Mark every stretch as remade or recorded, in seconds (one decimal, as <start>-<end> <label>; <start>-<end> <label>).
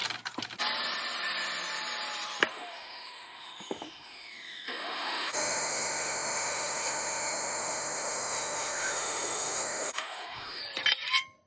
0.0-2.5 recorded; 2.5-10.6 remade; 10.6-11.5 recorded